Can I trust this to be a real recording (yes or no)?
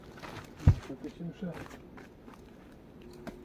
yes